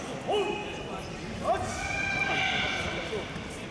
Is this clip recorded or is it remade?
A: recorded